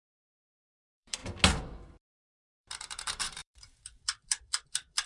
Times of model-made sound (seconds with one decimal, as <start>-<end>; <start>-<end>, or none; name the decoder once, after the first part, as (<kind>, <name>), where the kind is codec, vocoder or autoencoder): 0.0-1.2 (vocoder, BigVGAN v2); 1.8-5.1